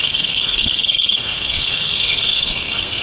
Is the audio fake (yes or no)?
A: yes